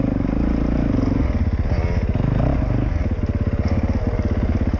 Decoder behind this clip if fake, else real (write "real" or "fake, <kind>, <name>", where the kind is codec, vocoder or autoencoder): real